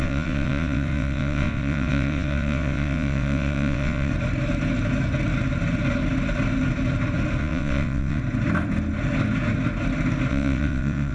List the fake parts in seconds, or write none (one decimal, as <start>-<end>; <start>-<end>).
0.0-4.1; 7.4-8.2; 10.3-11.1